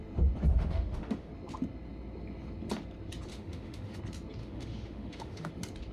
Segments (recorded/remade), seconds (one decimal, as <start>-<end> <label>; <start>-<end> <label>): 0.0-0.5 recorded; 0.5-1.3 remade; 1.3-3.3 recorded; 3.3-4.0 remade; 4.0-4.4 recorded; 4.4-5.5 remade; 5.5-5.9 recorded